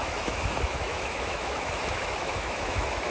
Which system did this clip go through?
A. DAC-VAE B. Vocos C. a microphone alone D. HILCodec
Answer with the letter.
A